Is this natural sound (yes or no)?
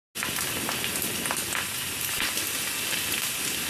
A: yes